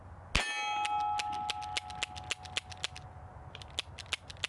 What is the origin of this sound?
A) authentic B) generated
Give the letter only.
A